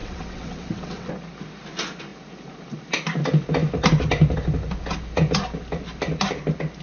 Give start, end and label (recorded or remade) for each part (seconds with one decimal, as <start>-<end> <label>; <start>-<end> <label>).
0.0-1.1 remade; 1.1-6.8 recorded